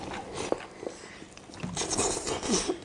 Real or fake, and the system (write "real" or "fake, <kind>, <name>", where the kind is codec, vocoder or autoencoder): real